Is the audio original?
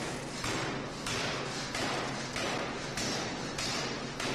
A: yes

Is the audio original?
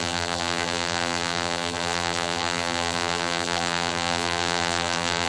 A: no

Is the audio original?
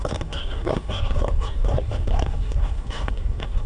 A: no